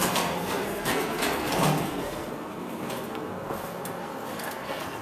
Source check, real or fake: fake